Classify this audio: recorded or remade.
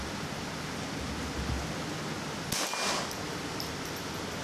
recorded